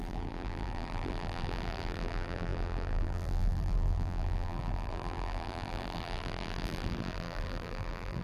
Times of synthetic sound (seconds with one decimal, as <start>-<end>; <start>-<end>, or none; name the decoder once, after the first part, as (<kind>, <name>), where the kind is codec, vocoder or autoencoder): 0.0-8.2 (vocoder, BigVGAN v2)